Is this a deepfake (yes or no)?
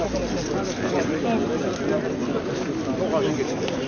no